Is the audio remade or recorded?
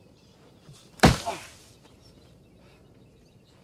remade